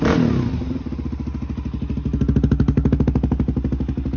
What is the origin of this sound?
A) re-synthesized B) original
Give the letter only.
B